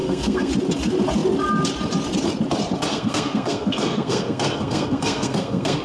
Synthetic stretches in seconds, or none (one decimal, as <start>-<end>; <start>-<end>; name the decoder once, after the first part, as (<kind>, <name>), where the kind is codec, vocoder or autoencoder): 0.0-0.5 (codec, SNAC); 2.9-5.8